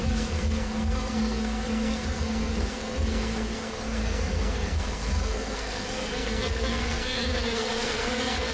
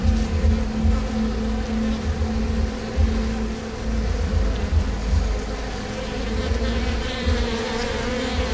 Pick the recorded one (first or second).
second